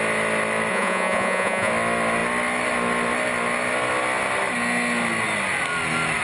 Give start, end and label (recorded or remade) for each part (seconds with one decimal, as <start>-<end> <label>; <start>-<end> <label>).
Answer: 0.0-0.7 recorded; 0.7-1.7 remade; 1.7-6.2 recorded

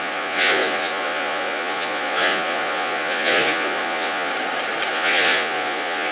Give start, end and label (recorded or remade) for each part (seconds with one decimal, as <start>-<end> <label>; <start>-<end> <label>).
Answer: 0.0-4.3 remade; 4.3-4.9 recorded; 4.9-6.1 remade

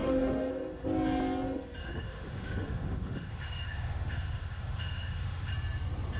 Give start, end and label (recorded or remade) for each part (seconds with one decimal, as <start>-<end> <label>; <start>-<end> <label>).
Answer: 0.0-0.5 remade; 0.5-1.8 recorded; 1.8-5.5 remade; 5.5-6.2 recorded